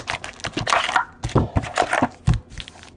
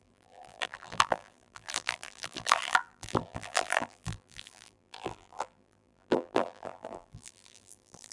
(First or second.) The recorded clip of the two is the first